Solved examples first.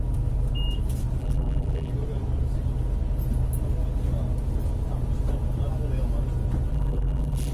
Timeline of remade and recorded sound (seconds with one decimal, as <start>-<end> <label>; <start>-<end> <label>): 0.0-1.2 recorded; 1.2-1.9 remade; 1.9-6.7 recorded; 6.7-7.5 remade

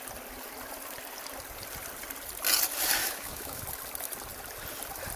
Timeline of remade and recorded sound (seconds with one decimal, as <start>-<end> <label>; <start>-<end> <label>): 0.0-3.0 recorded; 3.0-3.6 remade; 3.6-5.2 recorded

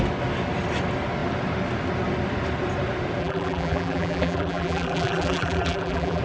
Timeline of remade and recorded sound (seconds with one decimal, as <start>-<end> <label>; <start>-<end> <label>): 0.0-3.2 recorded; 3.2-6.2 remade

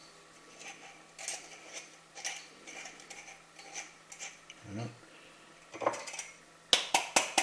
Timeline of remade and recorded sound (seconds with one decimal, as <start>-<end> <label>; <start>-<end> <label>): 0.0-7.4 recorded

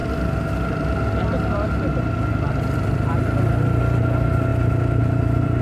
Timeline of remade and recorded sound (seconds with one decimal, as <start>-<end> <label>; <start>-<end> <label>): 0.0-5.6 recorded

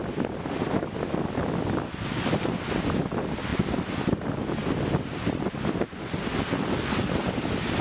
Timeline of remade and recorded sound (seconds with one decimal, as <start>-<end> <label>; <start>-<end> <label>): 0.0-7.8 recorded

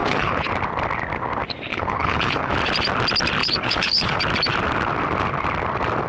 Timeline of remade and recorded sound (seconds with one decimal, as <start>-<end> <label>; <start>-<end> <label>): 0.0-0.5 remade; 0.5-1.7 recorded; 1.7-2.5 remade; 2.5-3.4 recorded; 3.4-4.2 remade; 4.2-6.1 recorded

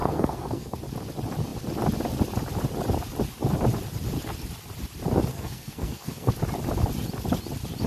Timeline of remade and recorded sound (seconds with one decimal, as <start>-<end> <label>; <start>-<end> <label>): 0.0-0.8 remade; 0.8-5.3 recorded; 5.3-6.3 remade; 6.3-7.9 recorded